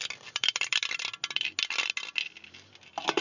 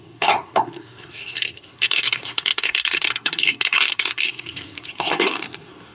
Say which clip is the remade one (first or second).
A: second